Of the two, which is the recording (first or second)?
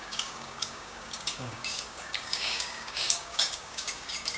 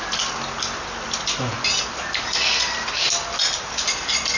second